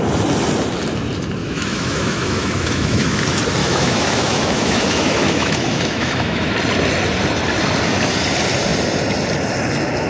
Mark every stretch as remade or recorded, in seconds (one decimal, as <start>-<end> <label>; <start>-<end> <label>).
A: 0.0-1.4 recorded; 1.4-3.2 remade; 3.2-3.6 recorded; 3.6-6.5 remade; 6.5-10.1 recorded